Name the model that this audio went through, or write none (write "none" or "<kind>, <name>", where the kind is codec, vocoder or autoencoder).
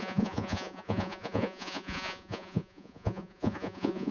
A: vocoder, Vocos